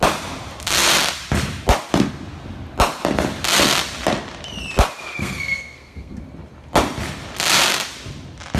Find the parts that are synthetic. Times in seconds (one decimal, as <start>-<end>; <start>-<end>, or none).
5.1-6.2